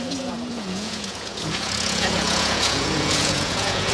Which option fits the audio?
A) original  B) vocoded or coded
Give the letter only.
B